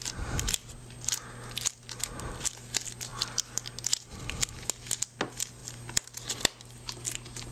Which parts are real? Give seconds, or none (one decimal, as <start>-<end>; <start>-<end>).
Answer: 0.0-7.5